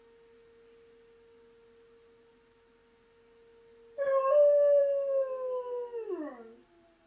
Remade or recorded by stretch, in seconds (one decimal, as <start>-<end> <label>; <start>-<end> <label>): 0.0-7.1 recorded